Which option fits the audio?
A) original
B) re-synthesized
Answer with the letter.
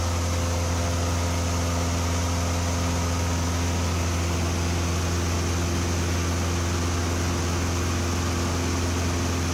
A